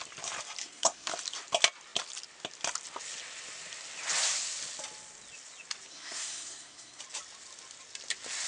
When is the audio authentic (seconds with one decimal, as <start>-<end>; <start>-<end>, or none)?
0.0-0.6; 1.1-5.9; 7.0-8.5